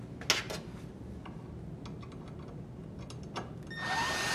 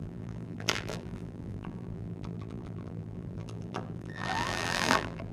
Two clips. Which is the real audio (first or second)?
first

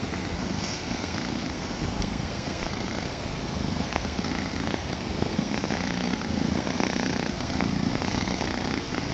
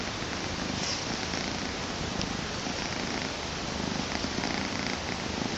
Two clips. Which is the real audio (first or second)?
second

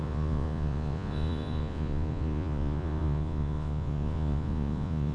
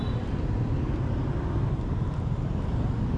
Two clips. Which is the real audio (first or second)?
second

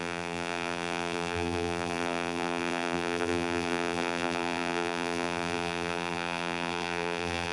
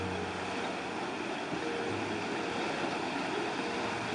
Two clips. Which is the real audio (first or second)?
second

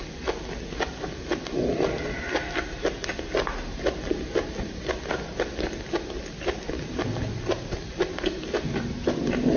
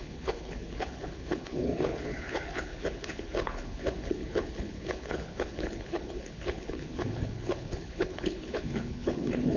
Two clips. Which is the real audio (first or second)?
first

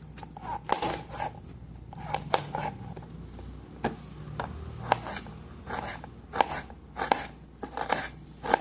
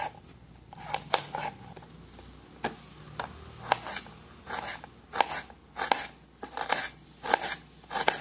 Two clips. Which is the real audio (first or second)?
second